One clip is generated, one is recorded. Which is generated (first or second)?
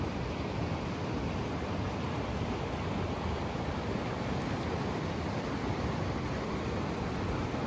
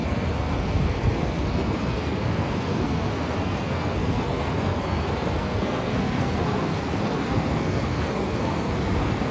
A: second